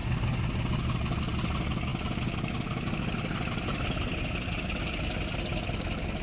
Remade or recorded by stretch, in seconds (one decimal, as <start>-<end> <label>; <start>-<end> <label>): 0.0-6.2 recorded